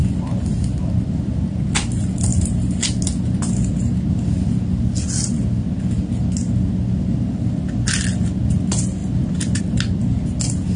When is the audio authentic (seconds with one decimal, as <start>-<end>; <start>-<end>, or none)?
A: 1.4-9.0; 9.6-10.8